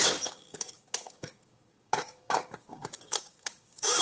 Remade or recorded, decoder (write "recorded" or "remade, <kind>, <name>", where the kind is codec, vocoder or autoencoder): remade, codec, DAC